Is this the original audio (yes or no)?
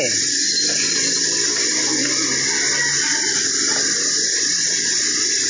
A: yes